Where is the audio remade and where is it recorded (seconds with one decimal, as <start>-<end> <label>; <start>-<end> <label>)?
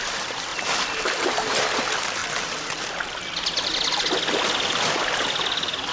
0.0-0.5 recorded; 0.5-1.8 remade; 1.8-5.9 recorded